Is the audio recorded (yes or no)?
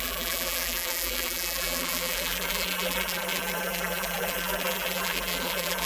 no